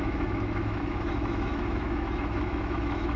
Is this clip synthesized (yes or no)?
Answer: yes